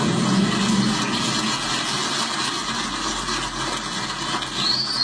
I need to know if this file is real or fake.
real